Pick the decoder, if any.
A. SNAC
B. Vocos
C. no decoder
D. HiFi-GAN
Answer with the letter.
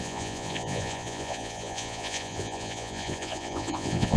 B